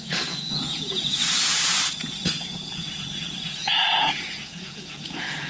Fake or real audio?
fake